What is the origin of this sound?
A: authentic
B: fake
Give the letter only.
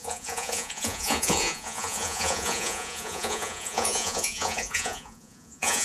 B